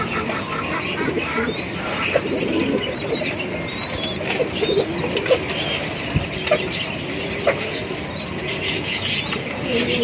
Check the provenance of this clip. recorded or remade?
recorded